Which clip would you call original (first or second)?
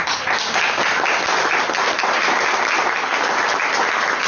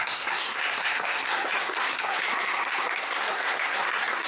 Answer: first